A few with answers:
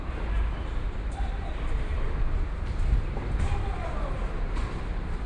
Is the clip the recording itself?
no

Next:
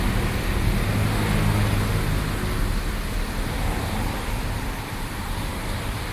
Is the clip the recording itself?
yes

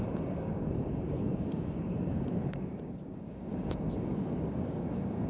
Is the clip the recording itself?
no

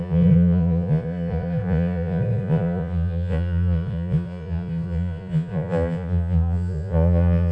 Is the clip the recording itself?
no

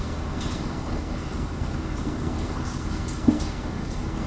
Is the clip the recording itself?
no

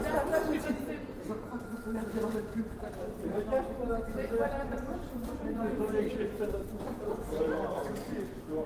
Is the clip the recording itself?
no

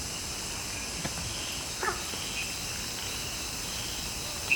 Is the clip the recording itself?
yes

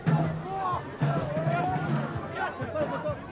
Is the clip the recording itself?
yes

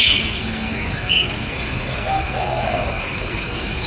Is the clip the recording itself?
no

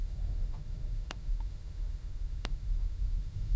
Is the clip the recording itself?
no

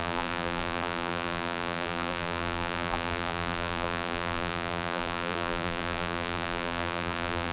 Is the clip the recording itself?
no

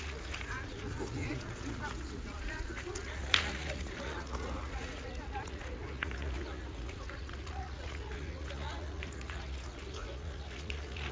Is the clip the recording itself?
no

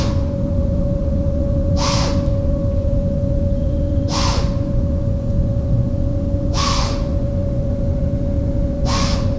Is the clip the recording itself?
no